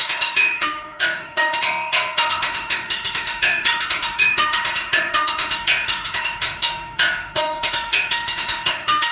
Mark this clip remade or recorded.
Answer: remade